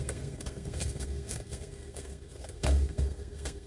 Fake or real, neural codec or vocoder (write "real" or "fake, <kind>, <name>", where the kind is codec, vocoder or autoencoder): fake, codec, SNAC